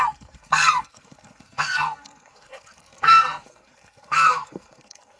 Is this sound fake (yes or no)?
yes